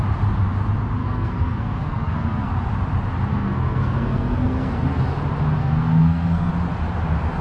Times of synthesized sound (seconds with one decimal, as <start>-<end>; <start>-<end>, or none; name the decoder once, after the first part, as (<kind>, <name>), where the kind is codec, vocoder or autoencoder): 1.0-2.5 (codec, SNAC); 3.3-5.0; 5.6-6.5